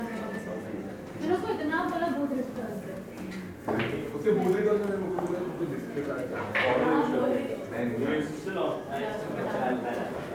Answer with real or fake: real